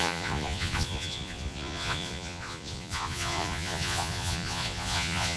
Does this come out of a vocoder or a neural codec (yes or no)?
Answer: yes